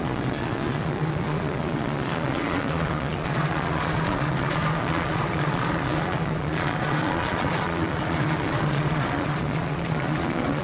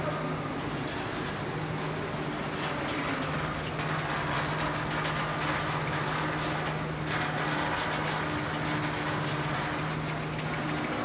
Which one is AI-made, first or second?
first